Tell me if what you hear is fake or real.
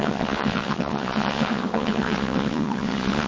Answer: fake